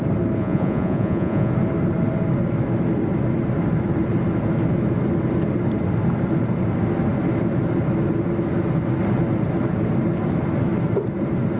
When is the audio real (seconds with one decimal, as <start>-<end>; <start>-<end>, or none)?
0.0-0.4; 1.5-11.6